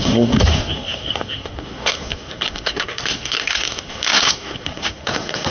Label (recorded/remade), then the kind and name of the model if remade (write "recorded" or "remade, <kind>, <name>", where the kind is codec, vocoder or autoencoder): remade, codec, SNAC